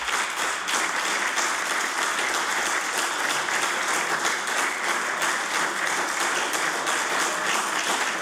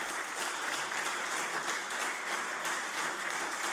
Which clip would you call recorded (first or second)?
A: first